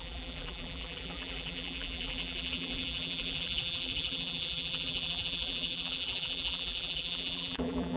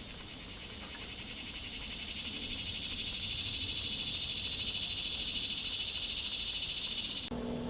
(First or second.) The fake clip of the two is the first